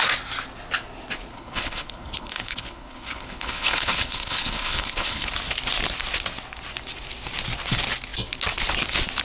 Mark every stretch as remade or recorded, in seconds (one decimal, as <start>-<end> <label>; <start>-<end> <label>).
0.0-1.3 recorded; 1.3-5.3 remade; 5.3-9.2 recorded